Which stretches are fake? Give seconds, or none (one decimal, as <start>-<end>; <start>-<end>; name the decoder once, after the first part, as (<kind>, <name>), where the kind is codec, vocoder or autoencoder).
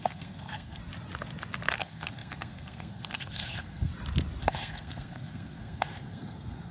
0.0-0.8 (codec, SNAC); 1.8-3.9; 4.4-6.7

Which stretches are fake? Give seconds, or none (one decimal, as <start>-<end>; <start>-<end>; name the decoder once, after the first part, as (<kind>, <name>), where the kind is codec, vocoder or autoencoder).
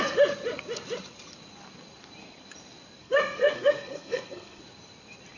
3.0-4.6 (codec, SNAC)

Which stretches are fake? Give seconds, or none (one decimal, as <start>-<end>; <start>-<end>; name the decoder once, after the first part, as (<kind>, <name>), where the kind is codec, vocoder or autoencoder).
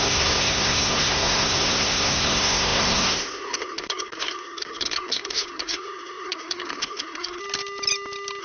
0.0-7.4 (codec, SNAC)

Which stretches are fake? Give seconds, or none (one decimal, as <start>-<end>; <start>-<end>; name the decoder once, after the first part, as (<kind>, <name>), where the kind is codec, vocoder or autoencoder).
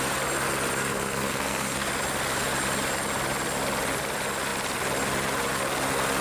0.8-1.9 (codec, SNAC)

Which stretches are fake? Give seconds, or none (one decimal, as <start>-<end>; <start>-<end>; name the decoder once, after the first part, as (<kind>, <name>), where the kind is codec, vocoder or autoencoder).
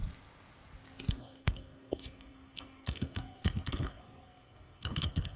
1.1-5.4 (codec, SNAC)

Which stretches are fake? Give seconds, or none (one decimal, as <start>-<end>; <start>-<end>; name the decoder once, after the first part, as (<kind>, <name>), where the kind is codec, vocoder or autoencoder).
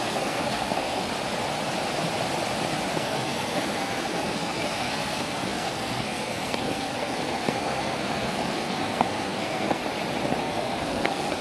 0.0-1.1 (codec, SNAC); 2.9-9.8; 10.4-11.4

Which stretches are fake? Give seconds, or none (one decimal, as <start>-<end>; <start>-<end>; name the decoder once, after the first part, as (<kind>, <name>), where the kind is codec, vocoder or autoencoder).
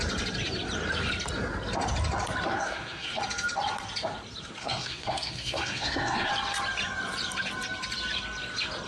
2.5-3.2 (codec, SNAC); 4.6-6.3